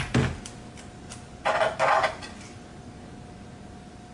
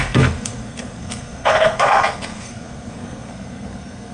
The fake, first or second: second